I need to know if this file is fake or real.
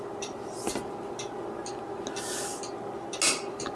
real